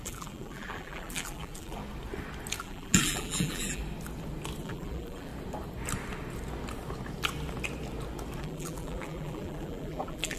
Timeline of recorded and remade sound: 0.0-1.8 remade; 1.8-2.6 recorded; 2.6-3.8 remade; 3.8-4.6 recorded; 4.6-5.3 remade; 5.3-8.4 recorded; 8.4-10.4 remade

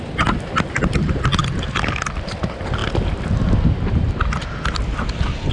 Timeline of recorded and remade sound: 0.0-1.4 recorded; 1.4-2.0 remade; 2.0-2.8 recorded; 2.8-5.5 remade

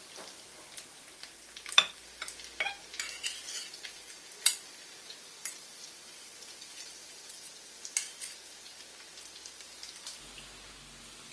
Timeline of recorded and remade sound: 0.0-3.4 recorded; 3.4-7.3 remade; 7.3-11.3 recorded

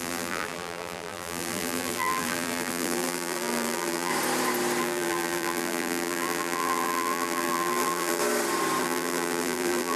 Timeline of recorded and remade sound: 0.0-4.1 remade; 4.1-4.8 recorded; 4.8-8.2 remade; 8.2-8.8 recorded; 8.8-10.0 remade

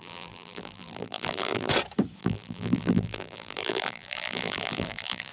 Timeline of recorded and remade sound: 0.0-1.7 remade; 1.7-2.2 recorded; 2.2-5.3 remade